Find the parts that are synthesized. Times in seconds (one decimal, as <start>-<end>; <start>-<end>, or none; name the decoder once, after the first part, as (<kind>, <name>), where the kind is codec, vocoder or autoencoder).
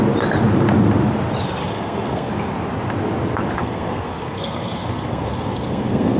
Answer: 1.6-2.3 (codec, SNAC); 3.6-6.2